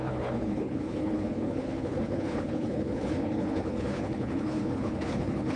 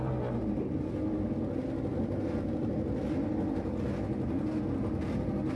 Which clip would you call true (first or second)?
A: second